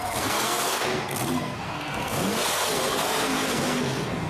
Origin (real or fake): fake